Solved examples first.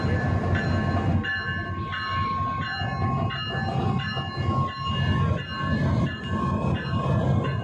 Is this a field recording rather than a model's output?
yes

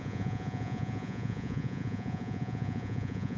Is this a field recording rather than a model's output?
no